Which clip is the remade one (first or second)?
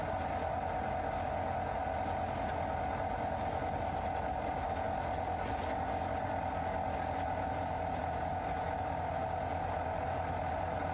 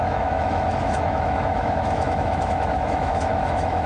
second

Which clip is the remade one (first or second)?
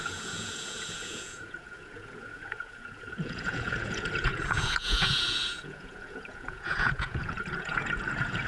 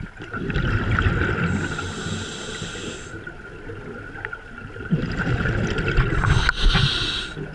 first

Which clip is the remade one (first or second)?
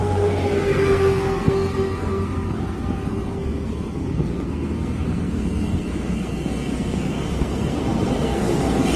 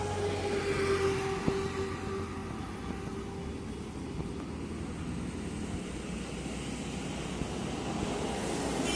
first